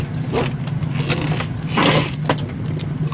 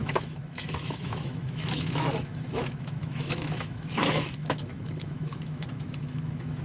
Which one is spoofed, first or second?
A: second